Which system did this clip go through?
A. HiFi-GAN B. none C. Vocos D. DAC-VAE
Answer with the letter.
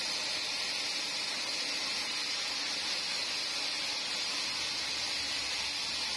B